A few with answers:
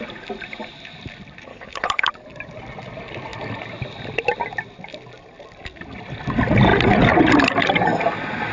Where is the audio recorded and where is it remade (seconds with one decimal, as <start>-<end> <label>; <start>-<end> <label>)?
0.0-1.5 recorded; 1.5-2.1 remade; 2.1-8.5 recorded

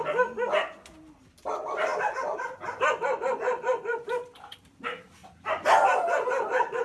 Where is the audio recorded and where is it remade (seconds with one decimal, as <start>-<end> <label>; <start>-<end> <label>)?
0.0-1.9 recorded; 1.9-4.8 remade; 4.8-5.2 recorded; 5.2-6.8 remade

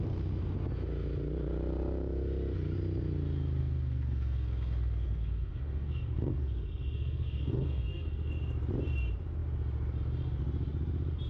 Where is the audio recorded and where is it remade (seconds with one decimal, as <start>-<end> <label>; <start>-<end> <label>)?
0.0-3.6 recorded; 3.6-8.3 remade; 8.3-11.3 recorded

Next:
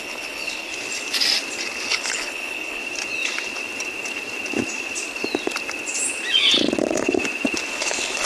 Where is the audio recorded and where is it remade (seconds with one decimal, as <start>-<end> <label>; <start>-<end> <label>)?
0.0-0.7 remade; 0.7-1.9 recorded; 1.9-2.8 remade; 2.8-7.7 recorded; 7.7-8.2 remade